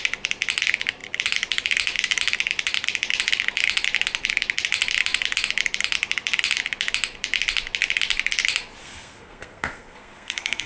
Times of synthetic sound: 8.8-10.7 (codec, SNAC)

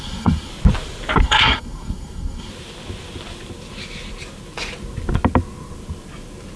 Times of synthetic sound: 0.0-0.5 (codec, SNAC); 1.2-2.5

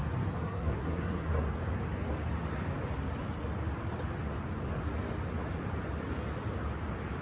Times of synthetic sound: 0.4-1.3 (codec, SNAC)

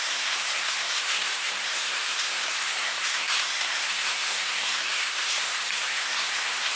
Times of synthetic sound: 0.0-6.8 (codec, SNAC)

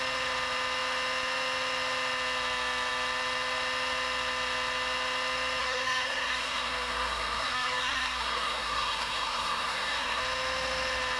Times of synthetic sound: 5.6-10.2 (codec, SNAC)

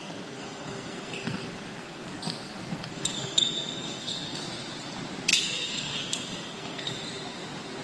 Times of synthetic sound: 0.0-4.4 (codec, SNAC); 5.3-6.9

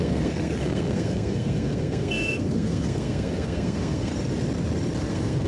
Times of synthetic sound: 0.0-4.1 (codec, SNAC); 5.1-5.5

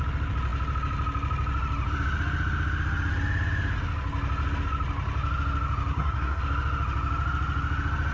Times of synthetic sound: 5.9-6.4 (codec, SNAC)